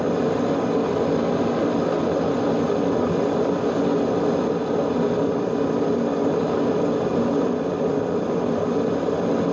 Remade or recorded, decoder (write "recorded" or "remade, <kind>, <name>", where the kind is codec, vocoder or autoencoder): recorded